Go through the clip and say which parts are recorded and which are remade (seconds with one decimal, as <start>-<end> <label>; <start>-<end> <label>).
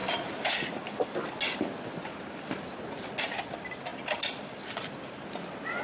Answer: 0.0-0.5 remade; 0.5-3.9 recorded; 3.9-5.2 remade; 5.2-5.8 recorded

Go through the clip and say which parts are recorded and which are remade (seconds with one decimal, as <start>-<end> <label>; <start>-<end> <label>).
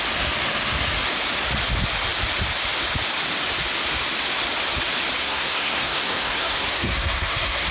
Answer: 0.0-5.2 recorded; 5.2-7.7 remade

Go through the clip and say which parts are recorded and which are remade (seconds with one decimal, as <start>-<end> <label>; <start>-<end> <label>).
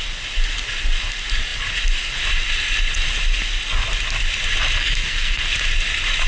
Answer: 0.0-4.8 recorded; 4.8-5.4 remade; 5.4-6.3 recorded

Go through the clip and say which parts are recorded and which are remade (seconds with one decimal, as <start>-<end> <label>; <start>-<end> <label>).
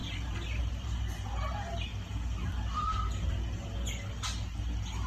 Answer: 0.0-1.9 remade; 1.9-5.1 recorded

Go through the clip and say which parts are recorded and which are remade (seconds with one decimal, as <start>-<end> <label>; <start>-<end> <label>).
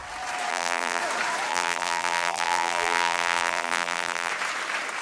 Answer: 0.0-0.5 recorded; 0.5-1.0 remade; 1.0-1.5 recorded; 1.5-4.3 remade; 4.3-5.0 recorded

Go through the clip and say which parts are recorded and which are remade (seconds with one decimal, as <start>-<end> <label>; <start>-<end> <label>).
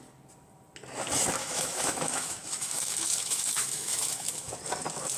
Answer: 0.0-1.4 recorded; 1.4-4.5 remade; 4.5-5.2 recorded